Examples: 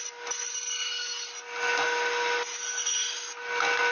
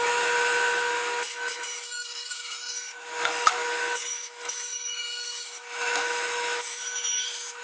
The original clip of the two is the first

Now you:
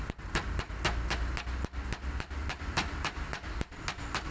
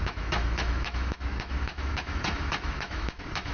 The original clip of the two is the first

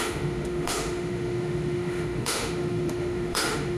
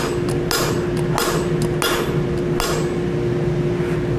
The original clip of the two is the second